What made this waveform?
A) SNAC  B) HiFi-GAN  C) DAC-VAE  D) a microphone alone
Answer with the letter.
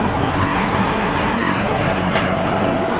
A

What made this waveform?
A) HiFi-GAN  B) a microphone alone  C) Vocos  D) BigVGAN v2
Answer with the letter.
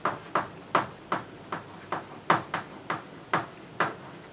B